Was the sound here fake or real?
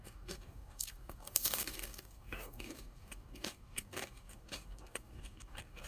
fake